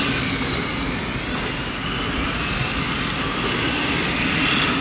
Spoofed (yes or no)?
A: no